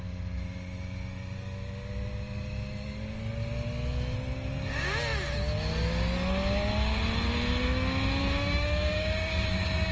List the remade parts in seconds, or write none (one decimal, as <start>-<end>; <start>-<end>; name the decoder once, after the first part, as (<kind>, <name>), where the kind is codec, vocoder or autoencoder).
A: 8.2-9.9 (codec, DAC)